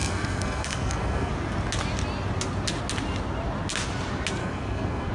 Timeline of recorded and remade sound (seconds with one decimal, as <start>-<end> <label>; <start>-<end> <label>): 0.0-1.3 remade; 1.3-4.4 recorded; 4.4-5.1 remade